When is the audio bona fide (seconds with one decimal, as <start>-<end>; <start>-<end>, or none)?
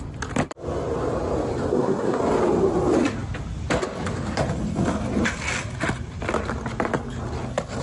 0.0-1.7; 2.2-7.8